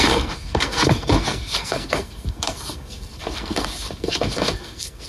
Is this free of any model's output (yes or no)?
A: no